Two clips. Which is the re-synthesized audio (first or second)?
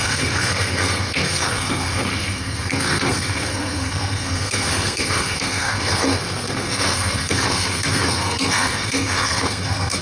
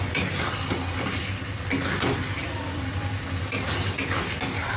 first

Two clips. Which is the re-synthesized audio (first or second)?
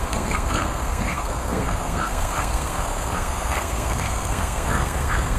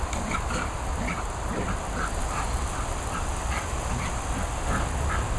first